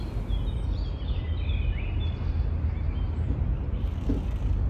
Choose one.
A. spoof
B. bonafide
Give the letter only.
B